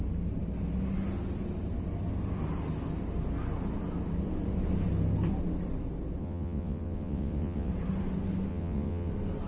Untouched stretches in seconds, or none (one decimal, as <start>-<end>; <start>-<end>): 0.0-6.2; 7.7-8.5; 9.1-9.5

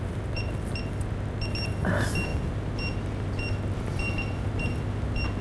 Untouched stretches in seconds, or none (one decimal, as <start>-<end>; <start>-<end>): 0.0-5.4